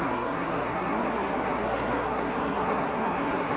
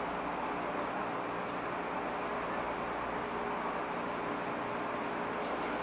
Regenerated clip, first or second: first